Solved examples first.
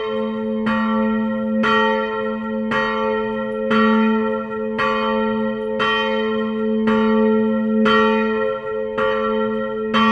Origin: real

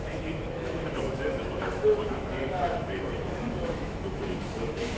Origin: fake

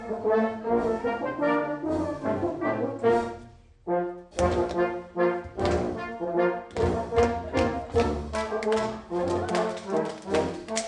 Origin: real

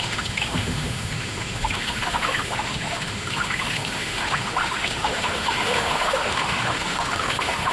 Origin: fake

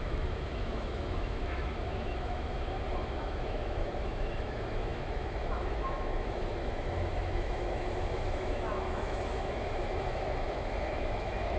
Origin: fake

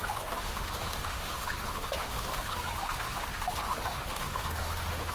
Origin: fake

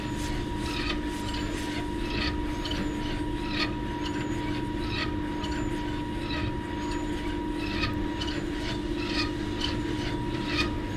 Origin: real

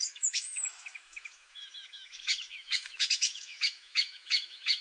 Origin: fake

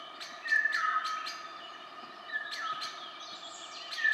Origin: real